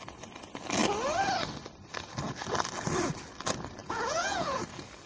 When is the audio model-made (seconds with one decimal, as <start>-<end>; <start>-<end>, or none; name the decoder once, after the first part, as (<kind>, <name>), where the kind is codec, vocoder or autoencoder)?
3.8-4.6 (vocoder, Vocos)